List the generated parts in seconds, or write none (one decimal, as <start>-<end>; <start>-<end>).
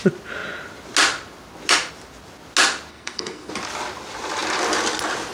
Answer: 2.9-3.5